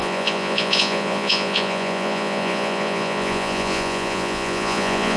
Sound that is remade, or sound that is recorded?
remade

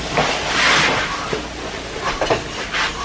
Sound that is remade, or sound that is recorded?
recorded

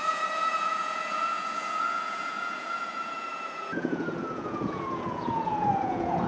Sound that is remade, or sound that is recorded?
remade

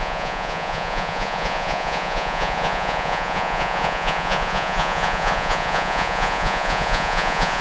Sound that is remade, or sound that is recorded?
remade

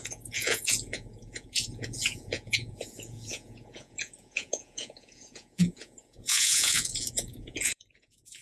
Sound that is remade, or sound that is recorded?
remade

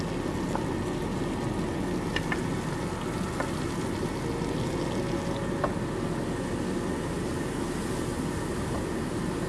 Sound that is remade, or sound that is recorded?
recorded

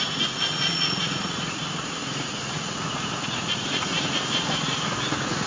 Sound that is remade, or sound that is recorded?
remade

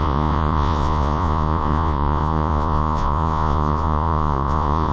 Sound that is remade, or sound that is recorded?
remade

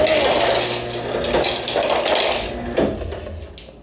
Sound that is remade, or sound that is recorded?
recorded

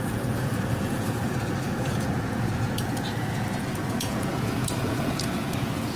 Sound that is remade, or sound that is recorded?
remade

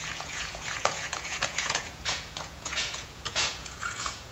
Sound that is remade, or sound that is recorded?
remade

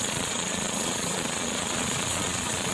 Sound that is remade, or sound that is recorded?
remade